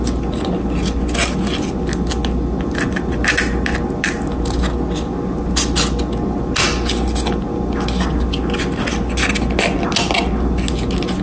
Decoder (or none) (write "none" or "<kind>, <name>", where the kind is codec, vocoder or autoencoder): none